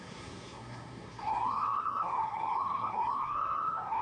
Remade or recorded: remade